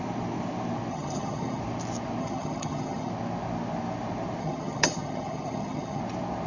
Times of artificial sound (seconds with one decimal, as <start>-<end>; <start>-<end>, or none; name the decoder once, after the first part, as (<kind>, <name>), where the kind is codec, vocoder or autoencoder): 0.9-1.6 (vocoder, HiFi-GAN); 2.2-3.1; 4.4-6.0